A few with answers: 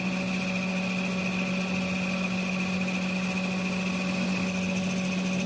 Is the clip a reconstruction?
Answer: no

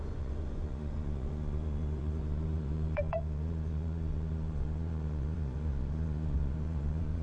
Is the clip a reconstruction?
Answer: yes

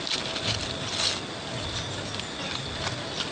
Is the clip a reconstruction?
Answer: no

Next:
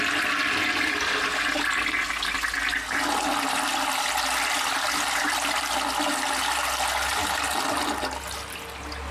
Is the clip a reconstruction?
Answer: no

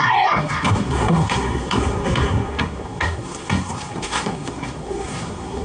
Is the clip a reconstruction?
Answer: yes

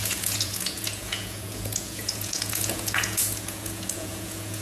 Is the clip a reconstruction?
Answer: yes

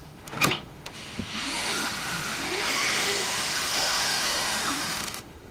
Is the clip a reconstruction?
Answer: yes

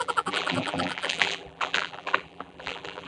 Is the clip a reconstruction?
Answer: yes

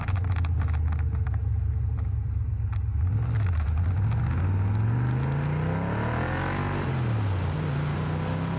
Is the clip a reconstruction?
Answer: no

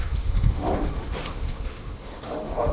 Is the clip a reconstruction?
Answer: yes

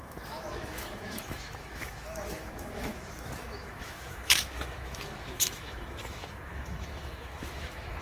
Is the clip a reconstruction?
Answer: yes